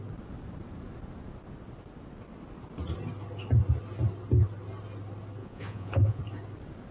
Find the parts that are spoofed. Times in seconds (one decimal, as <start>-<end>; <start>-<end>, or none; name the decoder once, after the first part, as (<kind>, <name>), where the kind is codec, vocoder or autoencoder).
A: 5.4-6.2 (vocoder, Vocos)